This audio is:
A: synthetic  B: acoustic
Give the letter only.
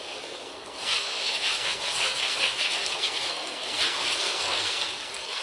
A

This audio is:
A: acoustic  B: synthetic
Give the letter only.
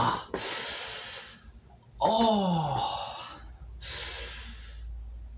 A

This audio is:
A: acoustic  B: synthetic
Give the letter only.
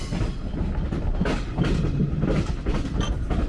A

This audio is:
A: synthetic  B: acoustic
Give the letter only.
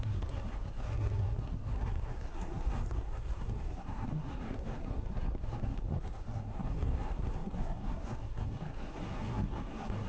A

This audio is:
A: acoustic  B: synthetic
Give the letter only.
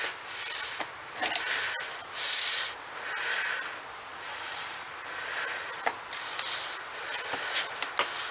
A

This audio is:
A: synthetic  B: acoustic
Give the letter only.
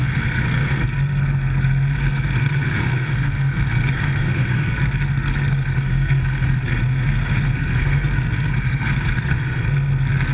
A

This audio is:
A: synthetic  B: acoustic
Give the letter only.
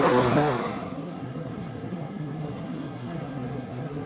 A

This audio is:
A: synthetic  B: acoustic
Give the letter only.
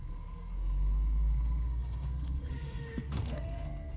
A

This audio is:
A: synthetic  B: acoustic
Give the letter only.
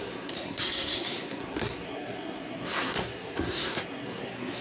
A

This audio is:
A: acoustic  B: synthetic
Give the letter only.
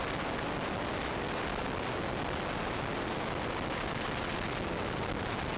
A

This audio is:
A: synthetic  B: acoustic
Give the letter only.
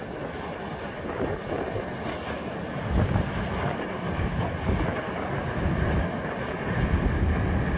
B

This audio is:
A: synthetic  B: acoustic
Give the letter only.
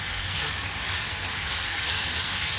A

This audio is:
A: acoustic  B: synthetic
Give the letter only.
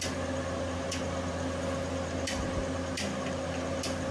A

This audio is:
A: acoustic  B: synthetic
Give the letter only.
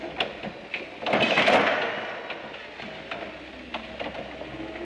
A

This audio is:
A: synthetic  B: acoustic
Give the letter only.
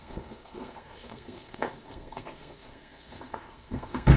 A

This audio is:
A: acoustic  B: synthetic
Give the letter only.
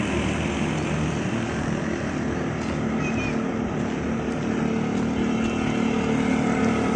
A